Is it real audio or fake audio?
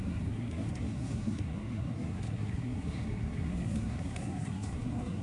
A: fake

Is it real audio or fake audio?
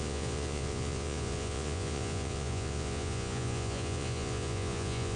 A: fake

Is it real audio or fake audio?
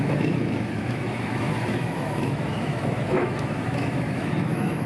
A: fake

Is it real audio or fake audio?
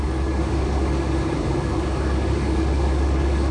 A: fake